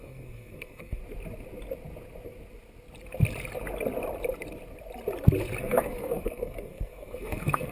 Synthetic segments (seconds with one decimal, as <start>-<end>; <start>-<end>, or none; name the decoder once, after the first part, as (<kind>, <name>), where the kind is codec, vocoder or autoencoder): 0.0-1.0 (codec, SNAC); 5.6-7.7

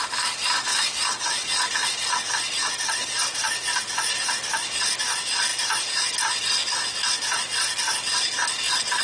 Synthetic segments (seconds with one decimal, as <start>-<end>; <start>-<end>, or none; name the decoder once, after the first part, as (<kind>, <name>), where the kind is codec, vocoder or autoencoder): none

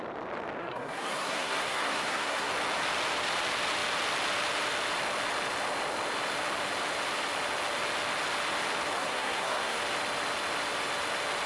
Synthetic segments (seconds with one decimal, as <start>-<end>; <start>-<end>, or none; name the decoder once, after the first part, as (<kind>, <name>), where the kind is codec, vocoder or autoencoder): 0.6-2.5 (codec, SNAC); 9.0-9.8